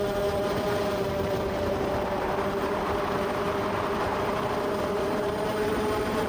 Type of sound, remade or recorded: remade